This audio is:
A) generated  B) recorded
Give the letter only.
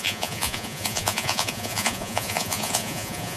A